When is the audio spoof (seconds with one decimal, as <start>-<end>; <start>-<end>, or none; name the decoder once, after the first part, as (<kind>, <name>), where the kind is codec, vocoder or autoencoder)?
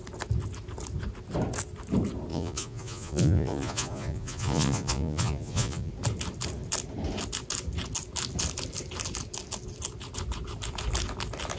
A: 2.3-5.9 (vocoder, Vocos)